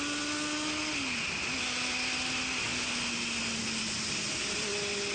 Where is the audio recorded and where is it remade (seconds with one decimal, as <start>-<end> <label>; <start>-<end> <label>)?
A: 0.0-5.1 recorded